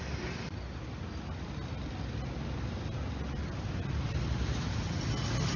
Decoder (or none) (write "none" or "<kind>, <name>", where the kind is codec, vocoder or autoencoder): none